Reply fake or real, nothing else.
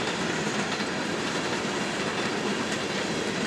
real